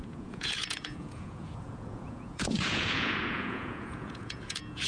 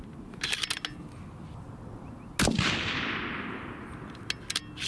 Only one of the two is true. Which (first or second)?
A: second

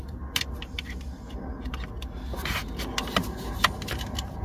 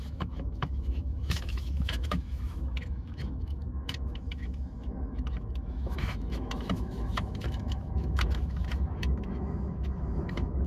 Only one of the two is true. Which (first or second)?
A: first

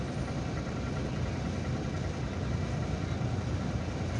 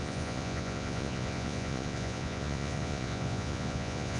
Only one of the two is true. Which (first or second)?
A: first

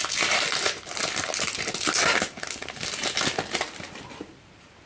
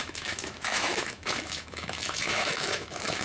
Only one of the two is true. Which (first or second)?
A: first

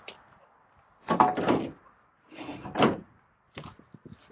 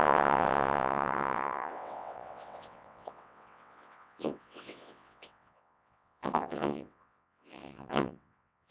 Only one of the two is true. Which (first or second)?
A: first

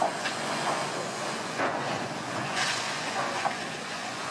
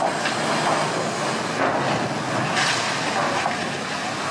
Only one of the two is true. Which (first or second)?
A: second